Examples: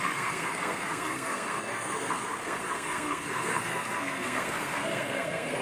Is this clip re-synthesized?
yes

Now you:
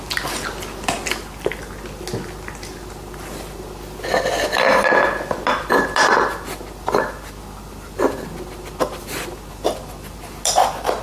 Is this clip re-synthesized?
no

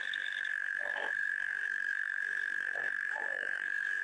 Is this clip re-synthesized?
yes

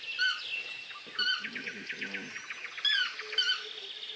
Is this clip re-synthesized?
no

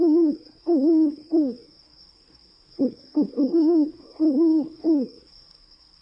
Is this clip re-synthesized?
yes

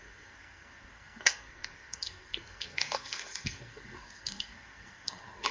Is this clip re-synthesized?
yes